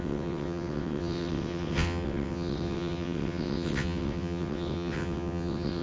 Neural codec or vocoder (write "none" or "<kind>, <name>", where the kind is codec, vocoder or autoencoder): vocoder, WaveNeXt